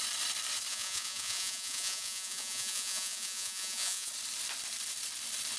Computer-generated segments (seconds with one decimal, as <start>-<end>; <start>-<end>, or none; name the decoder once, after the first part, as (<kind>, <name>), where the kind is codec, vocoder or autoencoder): 0.7-4.1 (vocoder, Vocos)